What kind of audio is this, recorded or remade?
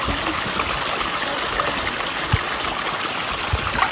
recorded